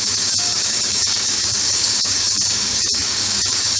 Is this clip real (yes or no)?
no